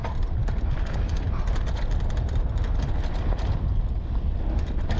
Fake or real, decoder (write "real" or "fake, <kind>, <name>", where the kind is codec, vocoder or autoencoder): real